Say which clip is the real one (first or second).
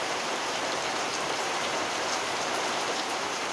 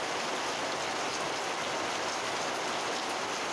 second